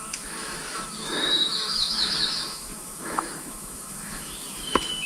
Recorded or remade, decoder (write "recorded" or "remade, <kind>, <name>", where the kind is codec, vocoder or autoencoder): remade, autoencoder, DAC-VAE